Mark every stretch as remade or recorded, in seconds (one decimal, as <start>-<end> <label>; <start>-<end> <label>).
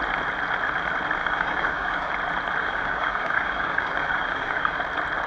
0.0-1.2 recorded; 1.2-2.1 remade; 2.1-2.6 recorded; 2.6-4.8 remade; 4.8-5.3 recorded